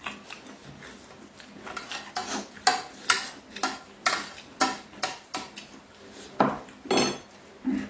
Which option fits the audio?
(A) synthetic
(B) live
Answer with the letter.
B